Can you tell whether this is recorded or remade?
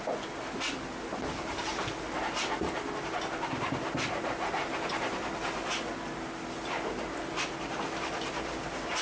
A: recorded